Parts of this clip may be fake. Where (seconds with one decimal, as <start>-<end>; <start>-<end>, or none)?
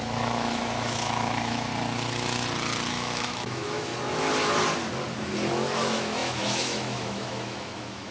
0.0-1.7; 2.9-3.9; 5.5-8.1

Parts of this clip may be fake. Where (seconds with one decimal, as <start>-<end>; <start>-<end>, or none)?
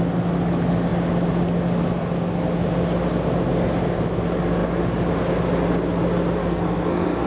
6.4-7.3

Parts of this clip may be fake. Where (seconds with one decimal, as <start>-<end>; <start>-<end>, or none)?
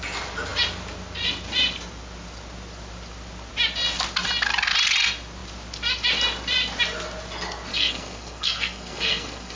7.7-9.6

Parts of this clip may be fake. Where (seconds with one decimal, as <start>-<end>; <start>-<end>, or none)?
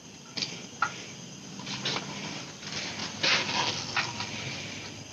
0.0-3.0; 3.7-5.1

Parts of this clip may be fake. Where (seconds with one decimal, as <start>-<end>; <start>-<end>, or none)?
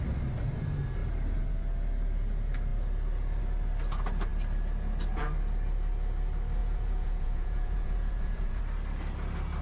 6.6-8.6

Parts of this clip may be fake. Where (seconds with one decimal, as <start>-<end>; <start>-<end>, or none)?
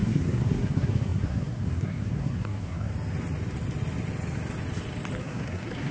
0.0-2.9; 5.2-5.9